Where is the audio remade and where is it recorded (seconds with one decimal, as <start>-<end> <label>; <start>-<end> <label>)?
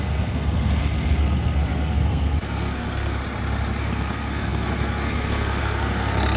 0.0-3.2 remade; 3.2-3.8 recorded; 3.8-6.4 remade